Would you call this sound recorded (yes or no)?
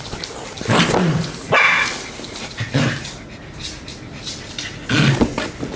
yes